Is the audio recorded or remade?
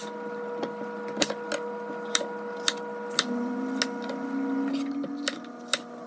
recorded